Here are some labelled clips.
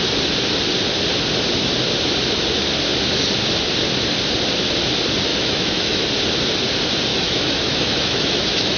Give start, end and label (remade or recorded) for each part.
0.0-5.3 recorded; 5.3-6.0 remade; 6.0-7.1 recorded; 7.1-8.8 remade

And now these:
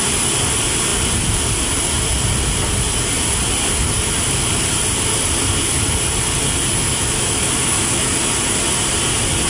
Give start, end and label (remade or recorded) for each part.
0.0-6.9 recorded; 6.9-8.1 remade; 8.1-9.5 recorded